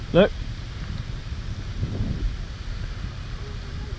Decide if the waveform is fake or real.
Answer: real